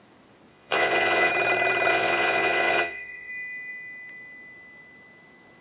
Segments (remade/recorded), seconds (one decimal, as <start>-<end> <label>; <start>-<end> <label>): 0.0-0.5 recorded; 0.5-1.3 remade; 1.3-1.9 recorded; 1.9-3.3 remade; 3.3-5.6 recorded